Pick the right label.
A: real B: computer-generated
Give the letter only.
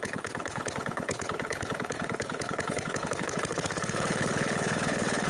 B